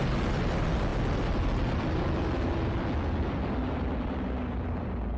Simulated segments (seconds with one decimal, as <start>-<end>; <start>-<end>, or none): none